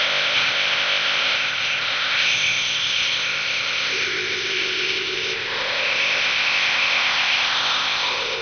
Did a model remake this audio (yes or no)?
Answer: yes